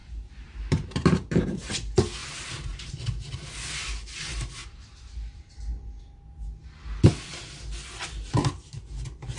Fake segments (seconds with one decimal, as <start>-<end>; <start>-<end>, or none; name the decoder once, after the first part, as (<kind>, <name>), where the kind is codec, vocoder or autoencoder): 0.0-1.7 (vocoder, BigVGAN v2); 2.2-2.9; 4.6-5.5